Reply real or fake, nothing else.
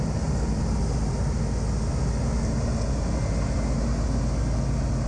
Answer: real